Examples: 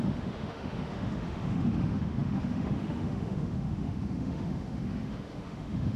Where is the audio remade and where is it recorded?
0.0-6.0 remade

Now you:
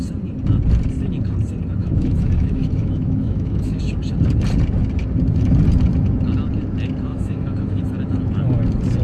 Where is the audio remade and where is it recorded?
0.0-1.8 recorded; 1.8-3.8 remade; 3.8-7.1 recorded; 7.1-7.8 remade; 7.8-9.0 recorded